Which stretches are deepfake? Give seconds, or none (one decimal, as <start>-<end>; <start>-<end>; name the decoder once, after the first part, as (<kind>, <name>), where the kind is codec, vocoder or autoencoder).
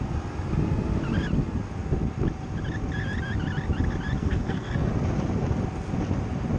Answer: 4.2-4.9 (codec, SNAC)